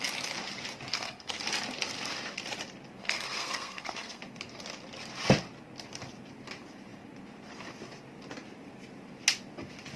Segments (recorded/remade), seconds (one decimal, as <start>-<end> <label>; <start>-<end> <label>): 0.0-0.9 recorded; 0.9-1.4 remade; 1.4-3.0 recorded; 3.0-4.2 remade; 4.2-10.0 recorded